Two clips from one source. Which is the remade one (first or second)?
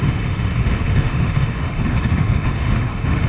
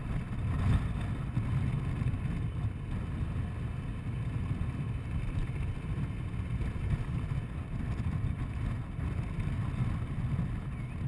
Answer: first